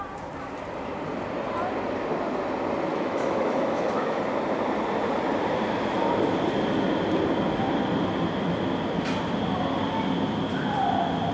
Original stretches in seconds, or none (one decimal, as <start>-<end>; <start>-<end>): 0.0-2.9; 4.2-11.3